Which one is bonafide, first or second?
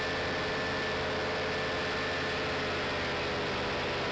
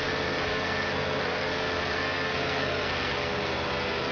first